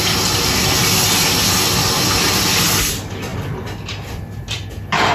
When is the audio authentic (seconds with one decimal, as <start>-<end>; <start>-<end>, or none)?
0.0-5.1